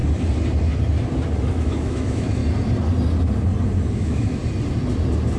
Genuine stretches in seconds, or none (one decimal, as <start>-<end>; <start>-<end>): 0.0-1.5; 2.4-3.9; 4.4-5.4